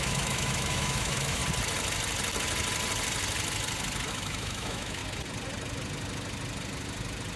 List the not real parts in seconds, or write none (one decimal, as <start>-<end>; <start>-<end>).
0.0-1.4; 4.1-5.0